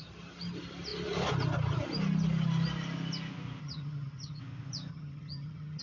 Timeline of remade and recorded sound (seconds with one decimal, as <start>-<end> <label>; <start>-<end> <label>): 0.0-3.6 recorded; 3.6-4.4 remade; 4.4-4.9 recorded; 4.9-5.8 remade